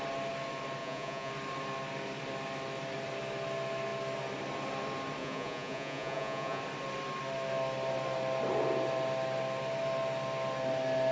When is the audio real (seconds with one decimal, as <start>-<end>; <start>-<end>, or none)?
0.0-0.8; 1.3-5.2; 6.6-11.1